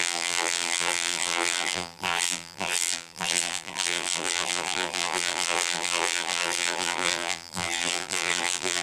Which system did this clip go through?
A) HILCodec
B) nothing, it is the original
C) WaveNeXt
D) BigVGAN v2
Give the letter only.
D